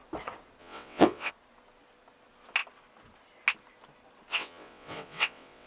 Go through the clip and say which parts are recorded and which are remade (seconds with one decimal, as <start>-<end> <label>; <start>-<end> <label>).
0.0-0.6 recorded; 0.6-1.3 remade; 1.3-4.3 recorded; 4.3-5.7 remade